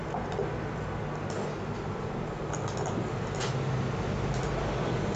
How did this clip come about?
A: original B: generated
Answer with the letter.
A